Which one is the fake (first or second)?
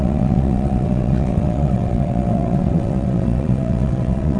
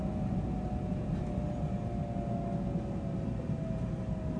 first